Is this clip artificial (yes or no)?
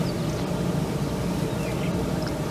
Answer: yes